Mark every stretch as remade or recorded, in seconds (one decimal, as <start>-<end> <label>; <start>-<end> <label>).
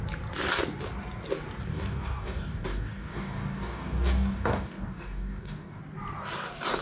0.0-1.7 recorded; 1.7-5.8 remade; 5.8-6.8 recorded